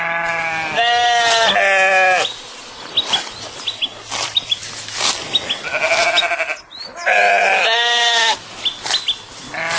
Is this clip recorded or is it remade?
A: recorded